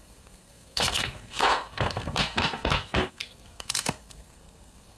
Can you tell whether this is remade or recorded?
remade